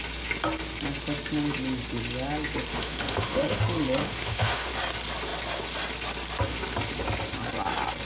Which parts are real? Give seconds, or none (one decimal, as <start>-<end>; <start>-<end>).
0.0-2.7; 3.6-4.0; 4.7-8.0